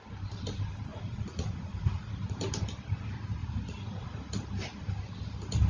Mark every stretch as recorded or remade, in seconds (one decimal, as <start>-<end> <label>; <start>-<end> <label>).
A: 0.0-0.9 recorded; 0.9-2.4 remade; 2.4-3.4 recorded; 3.4-4.2 remade; 4.2-5.7 recorded